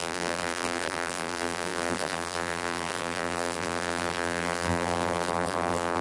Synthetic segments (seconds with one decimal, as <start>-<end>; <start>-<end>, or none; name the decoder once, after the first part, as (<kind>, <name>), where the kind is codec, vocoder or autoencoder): 0.0-6.0 (vocoder, BigVGAN v2)